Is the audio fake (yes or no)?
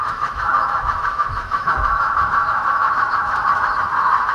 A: yes